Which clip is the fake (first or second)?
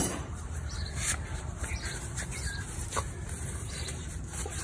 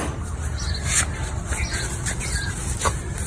first